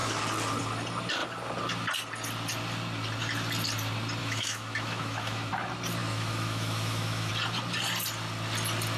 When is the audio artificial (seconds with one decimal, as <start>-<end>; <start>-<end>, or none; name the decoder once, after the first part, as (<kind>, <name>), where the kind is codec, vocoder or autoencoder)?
4.2-5.5 (autoencoder, DAC-VAE); 6.0-7.3